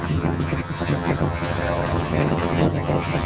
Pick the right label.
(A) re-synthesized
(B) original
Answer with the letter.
A